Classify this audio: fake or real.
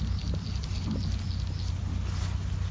real